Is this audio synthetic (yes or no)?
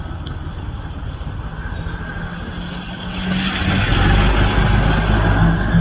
no